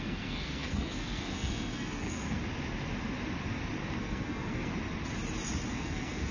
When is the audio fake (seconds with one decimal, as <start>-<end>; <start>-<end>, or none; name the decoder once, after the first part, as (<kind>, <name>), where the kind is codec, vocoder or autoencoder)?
0.0-2.4 (codec, SNAC); 4.0-4.7; 5.7-6.3